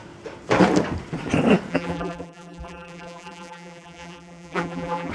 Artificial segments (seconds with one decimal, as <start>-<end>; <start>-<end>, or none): 1.7-5.1